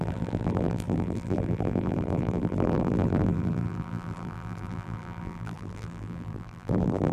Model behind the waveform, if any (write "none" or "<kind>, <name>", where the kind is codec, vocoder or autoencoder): vocoder, BigVGAN v2